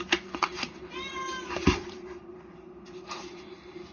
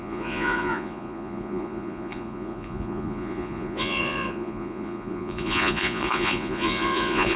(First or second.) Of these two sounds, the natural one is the first